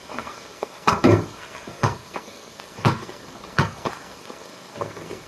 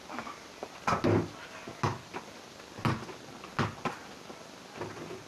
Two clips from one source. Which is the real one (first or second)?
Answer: second